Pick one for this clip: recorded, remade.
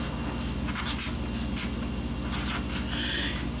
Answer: recorded